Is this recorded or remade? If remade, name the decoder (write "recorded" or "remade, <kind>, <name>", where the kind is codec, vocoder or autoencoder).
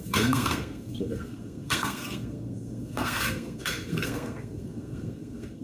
remade, codec, SNAC